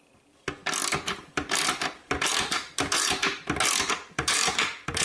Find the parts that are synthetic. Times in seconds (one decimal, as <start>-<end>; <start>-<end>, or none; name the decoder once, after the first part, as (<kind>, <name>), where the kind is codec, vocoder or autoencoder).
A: 0.0-0.6 (vocoder, BigVGAN v2); 1.1-3.2; 3.9-5.0